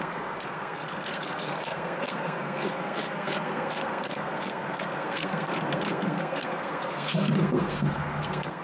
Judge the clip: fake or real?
fake